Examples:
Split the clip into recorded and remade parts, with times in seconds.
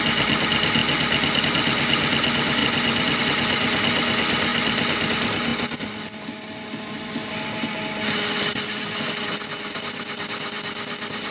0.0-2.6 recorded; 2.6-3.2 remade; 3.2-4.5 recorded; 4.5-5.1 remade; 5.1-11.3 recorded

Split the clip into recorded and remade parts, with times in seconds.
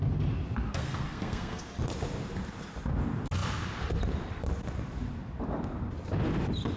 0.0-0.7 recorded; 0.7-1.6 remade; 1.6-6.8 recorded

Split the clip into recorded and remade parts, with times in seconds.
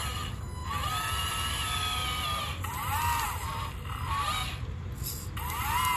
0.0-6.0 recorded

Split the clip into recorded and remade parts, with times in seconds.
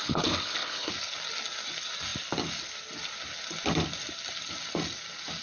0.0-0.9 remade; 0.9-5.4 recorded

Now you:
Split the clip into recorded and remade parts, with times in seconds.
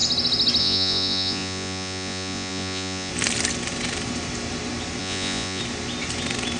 0.0-0.6 recorded; 0.6-3.1 remade; 3.1-5.0 recorded; 5.0-5.6 remade; 5.6-6.6 recorded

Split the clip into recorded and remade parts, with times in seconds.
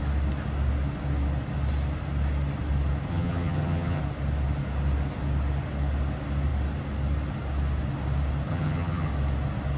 0.0-3.1 recorded; 3.1-4.0 remade; 4.0-8.5 recorded; 8.5-9.1 remade; 9.1-9.8 recorded